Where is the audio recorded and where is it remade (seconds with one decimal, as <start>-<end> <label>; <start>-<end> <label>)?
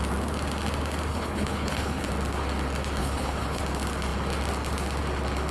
0.0-1.1 recorded; 1.1-2.1 remade; 2.1-3.0 recorded; 3.0-3.6 remade; 3.6-5.5 recorded